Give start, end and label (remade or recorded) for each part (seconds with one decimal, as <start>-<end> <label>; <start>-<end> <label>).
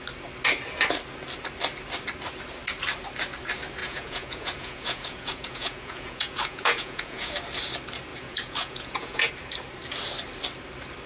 0.0-3.8 recorded; 3.8-7.3 remade; 7.3-8.1 recorded; 8.1-9.3 remade; 9.3-11.1 recorded